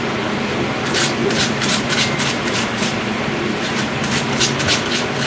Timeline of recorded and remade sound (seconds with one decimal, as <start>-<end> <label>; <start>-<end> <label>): 0.0-1.2 recorded; 1.2-4.4 remade; 4.4-5.3 recorded